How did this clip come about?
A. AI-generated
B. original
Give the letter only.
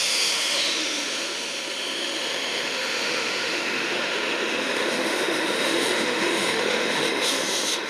A